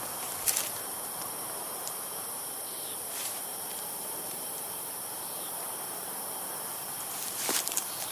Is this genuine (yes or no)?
no